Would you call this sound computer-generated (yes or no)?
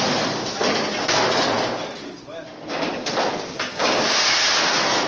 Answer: no